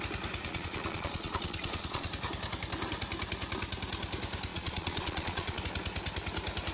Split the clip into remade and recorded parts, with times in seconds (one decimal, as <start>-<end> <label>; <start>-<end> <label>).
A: 0.0-0.4 recorded; 0.4-2.1 remade; 2.1-4.5 recorded; 4.5-5.6 remade; 5.6-6.7 recorded